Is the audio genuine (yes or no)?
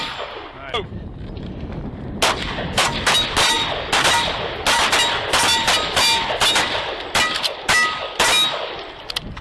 yes